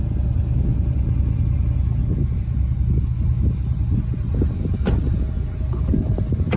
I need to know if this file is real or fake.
real